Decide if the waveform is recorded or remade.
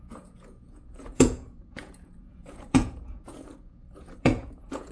remade